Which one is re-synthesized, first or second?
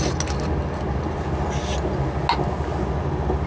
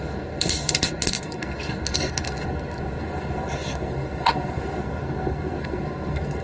second